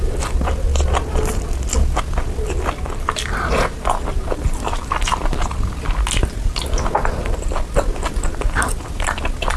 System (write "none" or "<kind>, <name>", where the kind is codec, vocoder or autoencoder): none